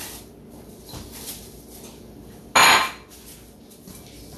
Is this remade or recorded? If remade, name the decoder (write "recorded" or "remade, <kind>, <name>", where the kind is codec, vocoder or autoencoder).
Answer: recorded